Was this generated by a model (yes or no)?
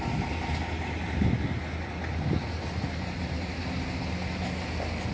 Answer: no